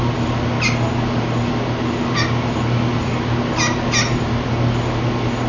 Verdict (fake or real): real